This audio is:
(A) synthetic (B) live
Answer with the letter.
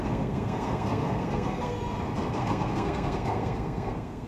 A